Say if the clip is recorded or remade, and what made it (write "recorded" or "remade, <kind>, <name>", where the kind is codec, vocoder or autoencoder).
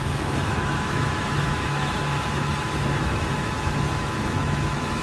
remade, autoencoder, DAC-VAE